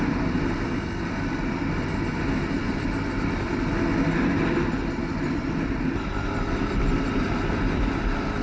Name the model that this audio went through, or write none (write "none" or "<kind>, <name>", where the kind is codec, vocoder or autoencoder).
none